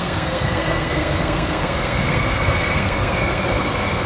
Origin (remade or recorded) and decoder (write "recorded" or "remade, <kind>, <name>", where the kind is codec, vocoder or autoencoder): remade, codec, SNAC